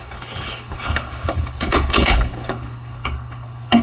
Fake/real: fake